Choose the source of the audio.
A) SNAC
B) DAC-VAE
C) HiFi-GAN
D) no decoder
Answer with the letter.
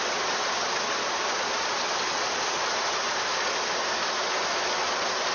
D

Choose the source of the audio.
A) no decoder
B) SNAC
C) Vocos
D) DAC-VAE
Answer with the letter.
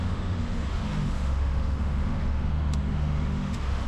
D